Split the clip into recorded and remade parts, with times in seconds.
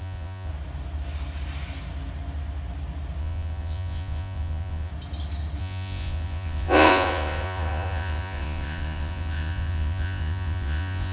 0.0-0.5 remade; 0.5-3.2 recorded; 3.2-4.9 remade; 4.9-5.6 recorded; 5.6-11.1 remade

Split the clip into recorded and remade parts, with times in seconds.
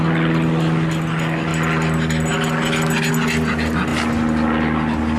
0.0-5.2 recorded